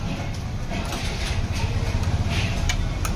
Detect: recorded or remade remade